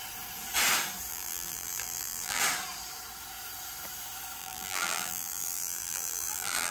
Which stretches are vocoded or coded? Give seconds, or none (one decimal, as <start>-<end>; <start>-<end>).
1.1-2.4; 4.4-6.7